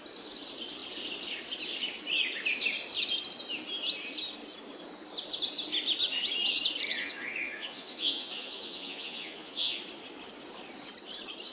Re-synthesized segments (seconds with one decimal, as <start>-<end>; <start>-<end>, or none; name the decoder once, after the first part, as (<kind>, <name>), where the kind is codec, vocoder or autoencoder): 6.9-9.8 (vocoder, Vocos)